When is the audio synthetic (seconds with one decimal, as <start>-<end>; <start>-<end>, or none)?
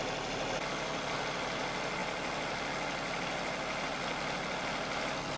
none